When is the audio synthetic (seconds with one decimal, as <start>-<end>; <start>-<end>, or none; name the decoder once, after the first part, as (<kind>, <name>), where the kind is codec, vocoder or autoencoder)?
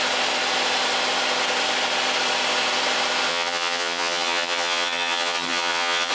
3.3-6.1 (vocoder, HiFi-GAN)